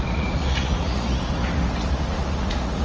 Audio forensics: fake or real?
fake